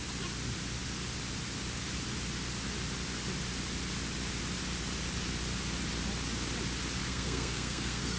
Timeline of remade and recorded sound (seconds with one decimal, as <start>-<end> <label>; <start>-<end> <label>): 0.0-7.0 recorded; 7.0-8.2 remade